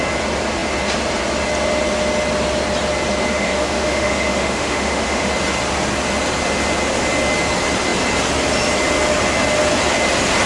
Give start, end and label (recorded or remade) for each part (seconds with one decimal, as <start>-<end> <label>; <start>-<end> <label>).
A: 0.0-3.3 recorded; 3.3-5.3 remade; 5.3-10.5 recorded